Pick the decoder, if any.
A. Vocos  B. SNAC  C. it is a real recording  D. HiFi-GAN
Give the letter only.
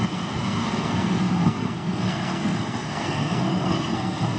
B